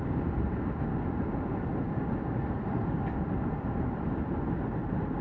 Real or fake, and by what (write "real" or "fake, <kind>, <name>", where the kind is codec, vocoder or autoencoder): real